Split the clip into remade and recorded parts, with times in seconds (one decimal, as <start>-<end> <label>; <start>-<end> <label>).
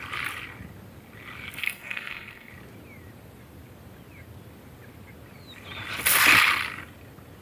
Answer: 0.0-1.6 recorded; 1.6-2.5 remade; 2.5-7.4 recorded